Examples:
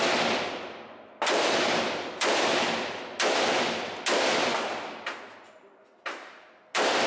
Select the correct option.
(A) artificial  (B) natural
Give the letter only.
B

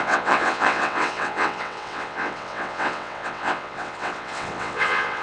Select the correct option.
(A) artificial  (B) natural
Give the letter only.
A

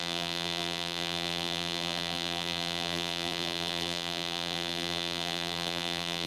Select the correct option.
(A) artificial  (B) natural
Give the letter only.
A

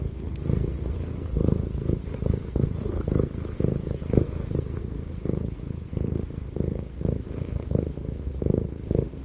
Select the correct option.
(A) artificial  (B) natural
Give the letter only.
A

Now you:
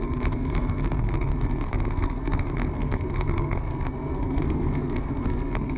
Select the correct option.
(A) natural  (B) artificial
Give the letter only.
B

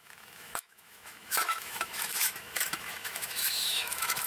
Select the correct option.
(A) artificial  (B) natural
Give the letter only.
A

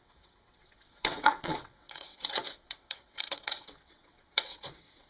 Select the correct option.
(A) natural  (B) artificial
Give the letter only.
B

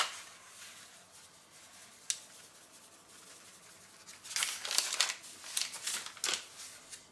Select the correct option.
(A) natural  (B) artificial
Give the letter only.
A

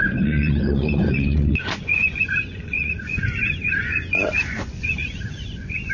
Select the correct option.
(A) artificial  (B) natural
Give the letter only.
A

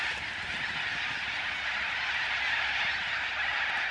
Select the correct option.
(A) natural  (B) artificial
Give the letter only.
A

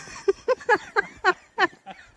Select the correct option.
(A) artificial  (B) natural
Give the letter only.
B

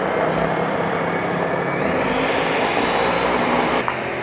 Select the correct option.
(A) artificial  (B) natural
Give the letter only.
B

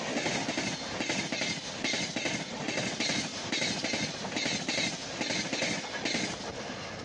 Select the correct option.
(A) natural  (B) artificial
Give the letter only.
A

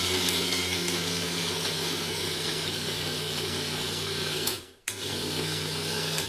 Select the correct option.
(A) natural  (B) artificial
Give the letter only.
B